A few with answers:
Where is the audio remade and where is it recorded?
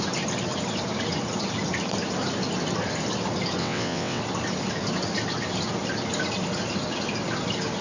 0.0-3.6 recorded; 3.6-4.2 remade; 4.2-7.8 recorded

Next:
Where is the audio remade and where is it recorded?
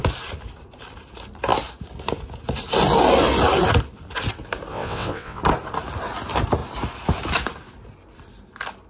0.0-4.7 recorded; 4.7-5.4 remade; 5.4-8.9 recorded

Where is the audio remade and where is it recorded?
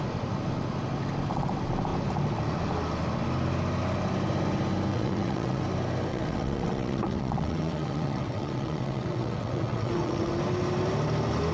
0.0-4.9 recorded; 4.9-5.6 remade; 5.6-6.1 recorded; 6.1-10.3 remade; 10.3-11.5 recorded